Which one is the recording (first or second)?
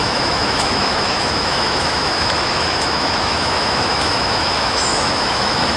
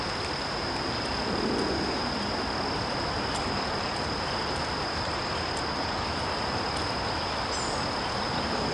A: second